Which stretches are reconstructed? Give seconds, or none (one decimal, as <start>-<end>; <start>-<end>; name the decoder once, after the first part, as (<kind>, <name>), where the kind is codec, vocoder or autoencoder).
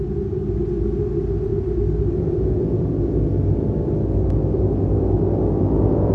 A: none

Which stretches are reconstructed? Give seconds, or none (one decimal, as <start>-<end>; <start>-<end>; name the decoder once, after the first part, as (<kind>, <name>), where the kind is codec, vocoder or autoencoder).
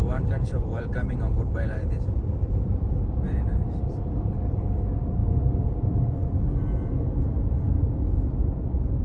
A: 0.0-5.2 (vocoder, BigVGAN v2); 5.7-6.2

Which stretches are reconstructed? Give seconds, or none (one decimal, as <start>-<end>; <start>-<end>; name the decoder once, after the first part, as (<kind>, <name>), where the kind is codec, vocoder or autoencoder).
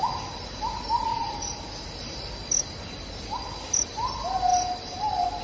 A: none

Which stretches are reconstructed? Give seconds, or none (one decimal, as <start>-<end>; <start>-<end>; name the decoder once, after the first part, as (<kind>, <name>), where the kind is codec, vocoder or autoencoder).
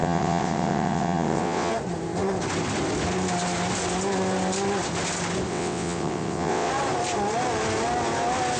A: 0.0-1.7 (vocoder, WaveNeXt); 5.5-6.7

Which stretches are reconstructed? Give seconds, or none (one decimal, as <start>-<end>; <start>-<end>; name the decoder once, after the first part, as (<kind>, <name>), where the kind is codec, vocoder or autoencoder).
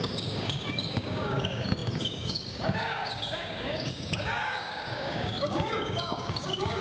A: 0.0-6.8 (codec, DAC)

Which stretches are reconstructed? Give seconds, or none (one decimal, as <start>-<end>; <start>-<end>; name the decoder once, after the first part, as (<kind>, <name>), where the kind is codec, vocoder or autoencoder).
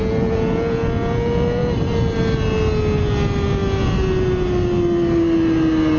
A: none